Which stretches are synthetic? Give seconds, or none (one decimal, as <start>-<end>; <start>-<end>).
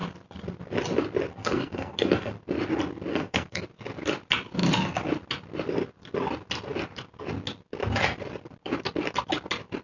1.4-2.3; 3.1-3.6